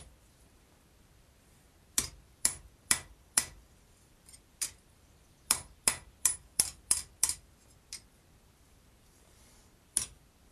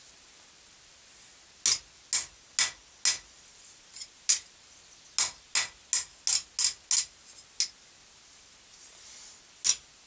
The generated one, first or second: first